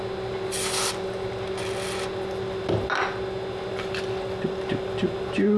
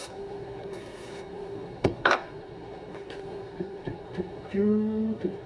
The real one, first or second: first